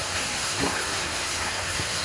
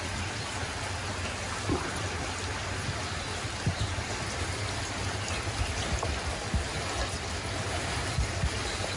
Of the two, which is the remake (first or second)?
first